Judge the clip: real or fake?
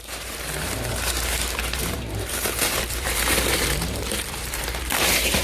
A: fake